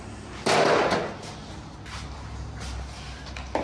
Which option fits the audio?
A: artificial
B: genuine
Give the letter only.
B